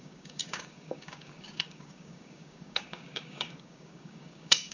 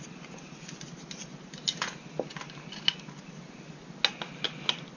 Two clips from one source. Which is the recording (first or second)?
second